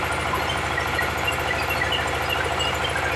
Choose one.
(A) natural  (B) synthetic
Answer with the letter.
A